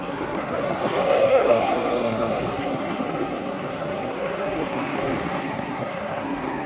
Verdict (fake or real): fake